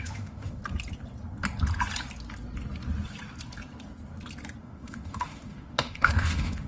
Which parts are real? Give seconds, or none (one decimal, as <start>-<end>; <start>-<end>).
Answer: 0.6-4.6

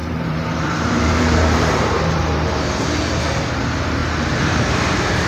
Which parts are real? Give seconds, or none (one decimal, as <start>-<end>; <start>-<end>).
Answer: 3.2-5.3

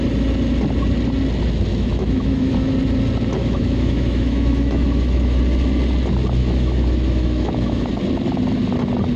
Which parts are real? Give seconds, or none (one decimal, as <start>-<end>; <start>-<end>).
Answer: 0.0-1.7; 2.7-3.4; 5.4-6.4; 7.9-9.2

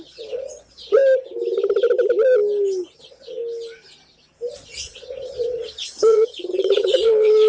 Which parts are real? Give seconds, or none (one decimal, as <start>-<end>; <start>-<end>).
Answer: 1.0-3.0; 3.4-4.5

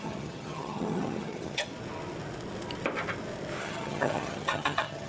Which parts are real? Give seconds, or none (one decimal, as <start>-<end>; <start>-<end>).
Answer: 1.7-3.6

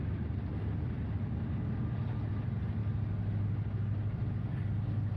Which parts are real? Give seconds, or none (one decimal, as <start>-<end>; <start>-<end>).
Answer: 0.0-5.2

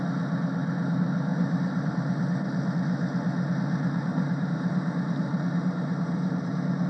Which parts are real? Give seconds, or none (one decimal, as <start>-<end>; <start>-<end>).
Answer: 0.0-4.1; 4.8-5.3; 6.5-6.9